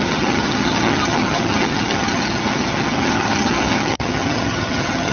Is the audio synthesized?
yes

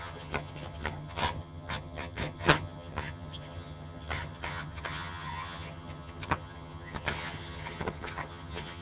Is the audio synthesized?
yes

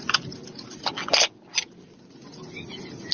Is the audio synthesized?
no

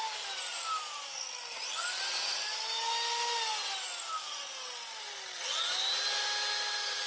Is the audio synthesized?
no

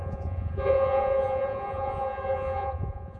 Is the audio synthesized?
yes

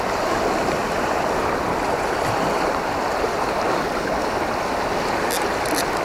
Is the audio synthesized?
no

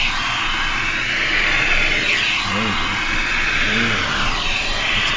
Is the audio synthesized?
no